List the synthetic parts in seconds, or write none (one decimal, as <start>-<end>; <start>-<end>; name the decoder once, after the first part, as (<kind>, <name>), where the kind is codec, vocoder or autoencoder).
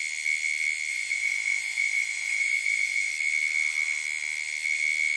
0.9-3.1 (vocoder, Vocos)